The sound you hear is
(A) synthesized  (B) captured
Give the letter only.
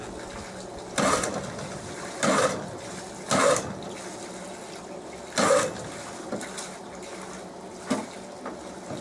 B